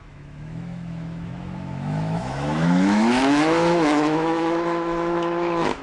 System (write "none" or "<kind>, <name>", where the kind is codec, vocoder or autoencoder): autoencoder, DAC-VAE